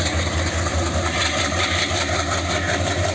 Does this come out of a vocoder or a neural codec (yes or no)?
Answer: no